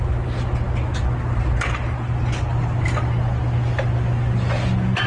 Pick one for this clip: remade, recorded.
recorded